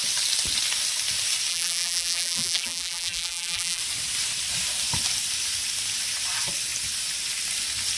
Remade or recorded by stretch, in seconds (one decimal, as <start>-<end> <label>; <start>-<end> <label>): 0.0-1.5 recorded; 1.5-3.8 remade; 3.8-8.0 recorded